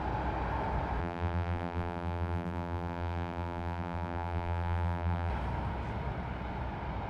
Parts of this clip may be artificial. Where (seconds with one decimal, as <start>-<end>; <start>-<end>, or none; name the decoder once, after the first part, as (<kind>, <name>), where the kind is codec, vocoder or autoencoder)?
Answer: 1.0-5.3 (vocoder, BigVGAN v2)